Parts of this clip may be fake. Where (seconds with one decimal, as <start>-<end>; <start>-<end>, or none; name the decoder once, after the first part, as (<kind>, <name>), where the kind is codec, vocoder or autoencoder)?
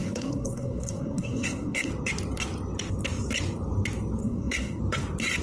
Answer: 0.0-1.9 (codec, SNAC); 4.2-4.8